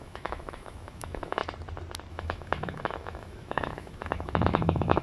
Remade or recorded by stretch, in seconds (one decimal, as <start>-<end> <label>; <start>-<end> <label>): 0.0-1.4 remade; 1.4-2.1 recorded; 2.1-5.0 remade